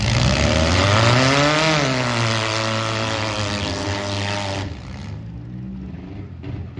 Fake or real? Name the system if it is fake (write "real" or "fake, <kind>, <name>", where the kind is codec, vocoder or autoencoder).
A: real